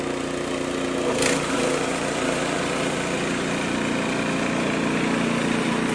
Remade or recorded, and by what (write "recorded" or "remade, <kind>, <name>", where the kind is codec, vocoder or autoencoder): recorded